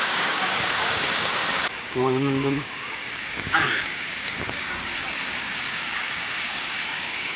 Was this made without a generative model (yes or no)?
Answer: no